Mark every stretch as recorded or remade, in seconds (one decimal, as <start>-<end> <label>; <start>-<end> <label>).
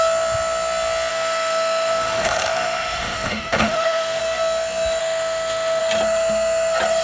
0.0-1.1 recorded; 1.1-4.2 remade; 4.2-5.0 recorded; 5.0-5.8 remade; 5.8-7.0 recorded